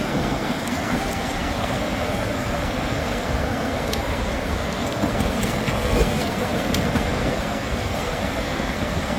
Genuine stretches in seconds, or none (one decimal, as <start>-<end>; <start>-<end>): none